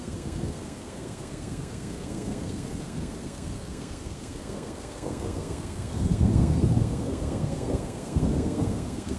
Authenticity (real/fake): fake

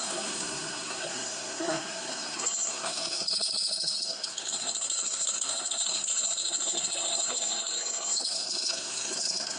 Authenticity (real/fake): fake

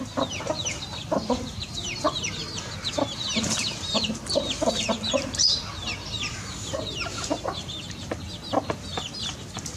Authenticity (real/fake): real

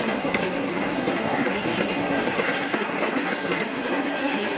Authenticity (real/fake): fake